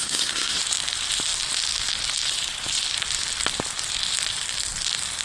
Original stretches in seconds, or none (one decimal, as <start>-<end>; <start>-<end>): 0.6-5.2